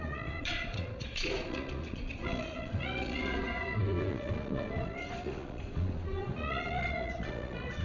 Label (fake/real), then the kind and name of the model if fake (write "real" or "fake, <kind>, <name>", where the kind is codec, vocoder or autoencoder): fake, vocoder, Vocos